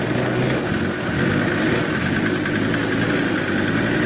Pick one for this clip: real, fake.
real